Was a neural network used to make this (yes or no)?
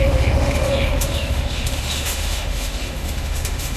yes